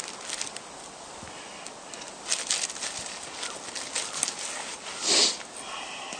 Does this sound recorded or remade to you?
recorded